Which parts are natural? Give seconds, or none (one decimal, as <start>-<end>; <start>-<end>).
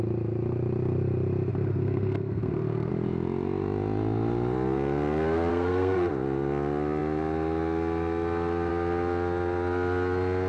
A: 0.0-1.5; 2.9-5.5; 6.1-10.5